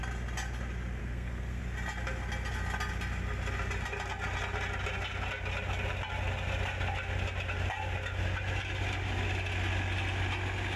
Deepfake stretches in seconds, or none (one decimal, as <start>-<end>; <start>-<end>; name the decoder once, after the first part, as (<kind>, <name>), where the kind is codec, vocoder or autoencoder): 1.0-1.6 (codec, SNAC)